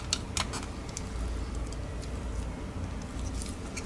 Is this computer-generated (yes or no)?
no